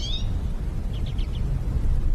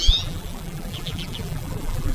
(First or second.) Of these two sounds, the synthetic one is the second